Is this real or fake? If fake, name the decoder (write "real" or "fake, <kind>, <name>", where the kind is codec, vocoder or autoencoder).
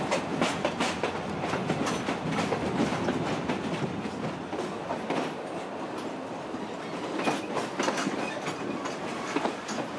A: real